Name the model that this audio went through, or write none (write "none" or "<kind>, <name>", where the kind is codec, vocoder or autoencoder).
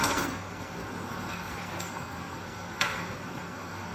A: codec, SNAC